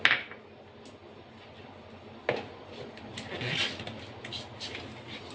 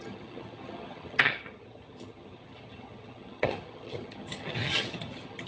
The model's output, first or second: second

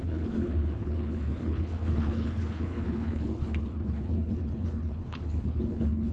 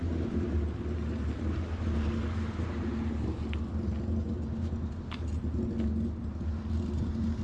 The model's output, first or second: first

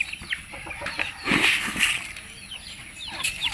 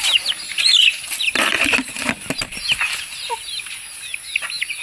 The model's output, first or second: first